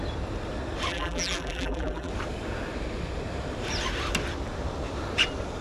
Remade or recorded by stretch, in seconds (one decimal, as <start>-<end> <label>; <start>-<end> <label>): 0.0-0.9 recorded; 0.9-2.1 remade; 2.1-5.6 recorded